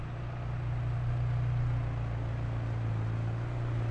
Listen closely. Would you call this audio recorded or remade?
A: recorded